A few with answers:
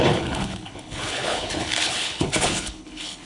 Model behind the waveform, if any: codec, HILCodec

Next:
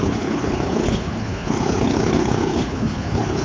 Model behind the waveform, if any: codec, HILCodec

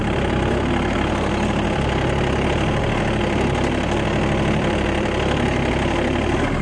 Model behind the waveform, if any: none